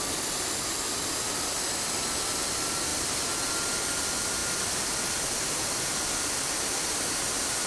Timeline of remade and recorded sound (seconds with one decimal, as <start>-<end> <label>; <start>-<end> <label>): 0.0-7.7 recorded